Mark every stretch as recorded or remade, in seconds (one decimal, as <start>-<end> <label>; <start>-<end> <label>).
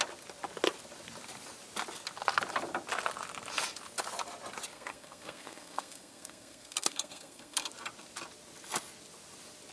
0.0-4.7 recorded; 4.7-7.7 remade; 7.7-9.7 recorded